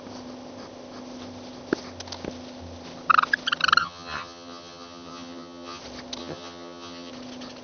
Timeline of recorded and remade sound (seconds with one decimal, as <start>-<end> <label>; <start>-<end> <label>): 0.0-3.8 recorded; 3.8-5.8 remade; 5.8-6.2 recorded; 6.2-7.1 remade; 7.1-7.6 recorded